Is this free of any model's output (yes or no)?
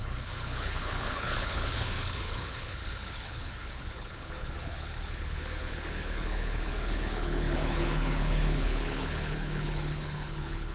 no